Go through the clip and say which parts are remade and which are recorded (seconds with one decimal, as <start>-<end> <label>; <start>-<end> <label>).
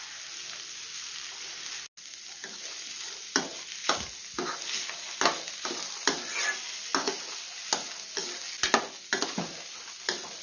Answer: 0.0-10.4 recorded